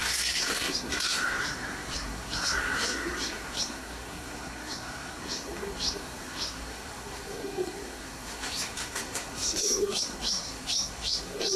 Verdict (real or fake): fake